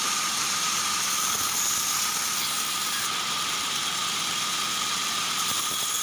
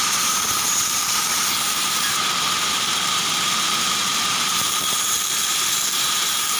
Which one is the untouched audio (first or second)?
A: first